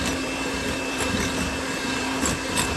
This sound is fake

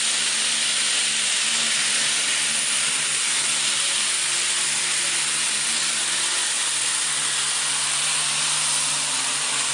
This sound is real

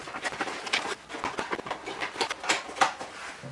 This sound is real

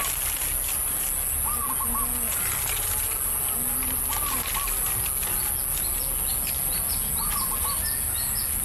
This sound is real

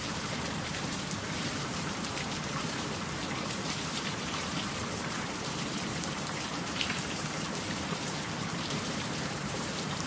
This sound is fake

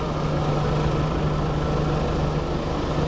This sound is real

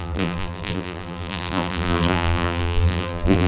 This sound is fake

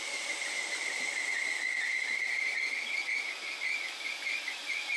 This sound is real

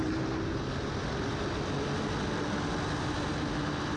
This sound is real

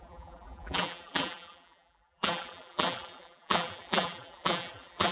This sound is fake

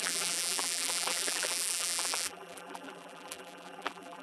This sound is fake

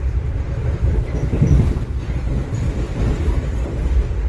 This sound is fake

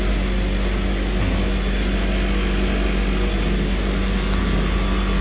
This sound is real